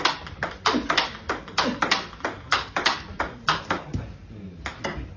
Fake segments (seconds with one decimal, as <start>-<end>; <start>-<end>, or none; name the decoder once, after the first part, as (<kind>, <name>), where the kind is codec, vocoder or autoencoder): 0.0-3.9 (vocoder, BigVGAN v2); 4.7-5.2